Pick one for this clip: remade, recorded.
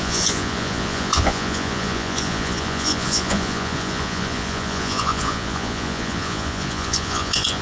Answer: remade